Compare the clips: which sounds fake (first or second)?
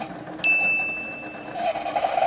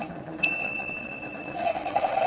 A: second